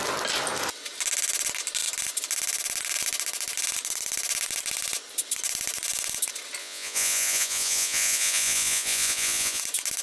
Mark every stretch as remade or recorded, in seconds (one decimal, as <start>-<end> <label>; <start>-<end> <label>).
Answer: 0.0-6.6 recorded; 6.6-9.6 remade; 9.6-10.0 recorded